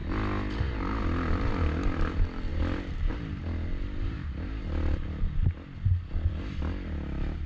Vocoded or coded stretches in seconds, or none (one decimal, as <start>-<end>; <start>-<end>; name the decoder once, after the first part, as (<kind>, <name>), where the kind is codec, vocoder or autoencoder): none